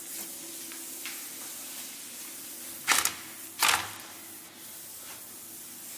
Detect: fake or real real